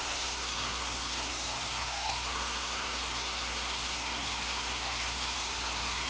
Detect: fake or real fake